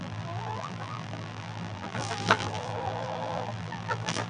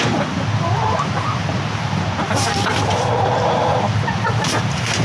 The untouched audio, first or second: second